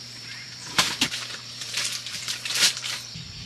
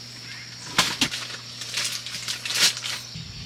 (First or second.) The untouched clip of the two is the second